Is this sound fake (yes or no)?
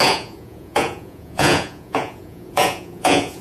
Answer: yes